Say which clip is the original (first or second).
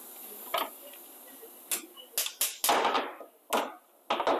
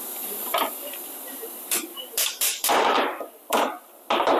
first